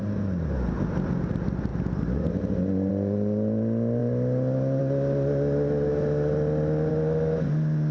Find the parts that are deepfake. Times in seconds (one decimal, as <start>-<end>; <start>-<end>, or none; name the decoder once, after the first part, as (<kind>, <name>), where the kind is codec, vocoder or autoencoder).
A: none

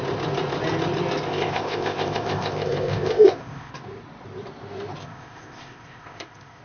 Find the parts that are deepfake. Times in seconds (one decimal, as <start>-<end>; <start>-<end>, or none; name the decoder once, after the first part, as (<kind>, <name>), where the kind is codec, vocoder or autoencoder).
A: 1.3-3.7 (codec, ZipCodec); 5.0-6.6

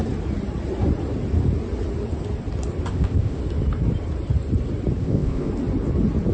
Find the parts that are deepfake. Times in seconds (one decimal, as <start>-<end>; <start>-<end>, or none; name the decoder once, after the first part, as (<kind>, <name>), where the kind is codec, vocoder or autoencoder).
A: 2.9-3.4 (codec, ZipCodec); 5.0-5.5

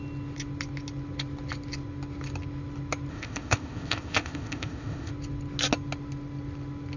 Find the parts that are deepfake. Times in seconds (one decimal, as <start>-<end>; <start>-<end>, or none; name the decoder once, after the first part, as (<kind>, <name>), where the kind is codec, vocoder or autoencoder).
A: 3.1-5.1 (codec, ZipCodec)